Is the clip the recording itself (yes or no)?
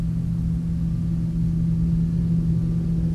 yes